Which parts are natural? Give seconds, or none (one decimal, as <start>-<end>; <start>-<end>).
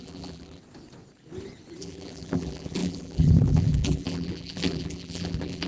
0.6-1.8